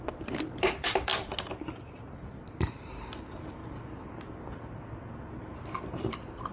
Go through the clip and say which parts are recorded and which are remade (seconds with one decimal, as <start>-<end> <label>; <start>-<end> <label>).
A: 0.0-3.6 remade; 3.6-6.0 recorded; 6.0-6.5 remade

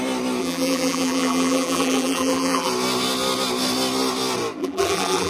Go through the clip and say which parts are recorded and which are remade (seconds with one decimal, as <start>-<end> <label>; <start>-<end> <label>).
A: 0.0-0.4 recorded; 0.4-2.7 remade; 2.7-4.6 recorded; 4.6-5.3 remade